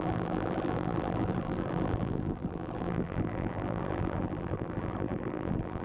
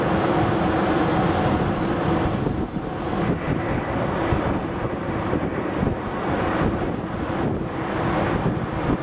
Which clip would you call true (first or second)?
second